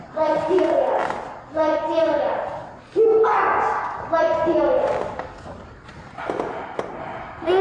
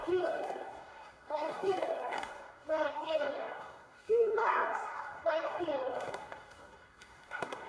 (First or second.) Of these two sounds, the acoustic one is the first